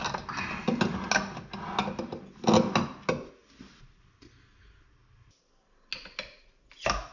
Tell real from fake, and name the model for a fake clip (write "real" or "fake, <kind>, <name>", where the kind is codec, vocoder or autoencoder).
real